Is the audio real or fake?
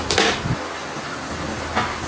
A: real